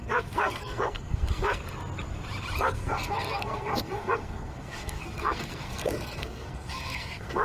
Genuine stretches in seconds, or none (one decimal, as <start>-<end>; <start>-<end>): 1.6-2.6